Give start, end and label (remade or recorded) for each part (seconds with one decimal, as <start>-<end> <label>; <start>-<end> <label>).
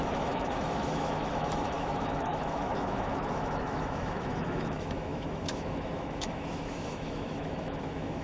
0.0-8.2 remade